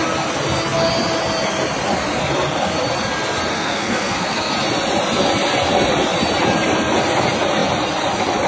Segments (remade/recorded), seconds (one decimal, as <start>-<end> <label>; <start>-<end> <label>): 0.0-3.5 recorded; 3.5-4.5 remade; 4.5-8.5 recorded